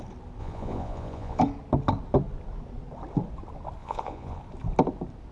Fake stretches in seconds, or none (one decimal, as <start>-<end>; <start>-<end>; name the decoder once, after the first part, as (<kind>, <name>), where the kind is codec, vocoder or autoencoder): 0.4-1.4 (vocoder, Vocos); 3.8-4.4